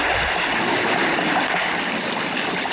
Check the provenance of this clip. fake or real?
real